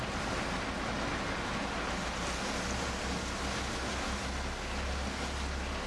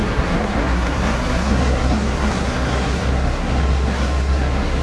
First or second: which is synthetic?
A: second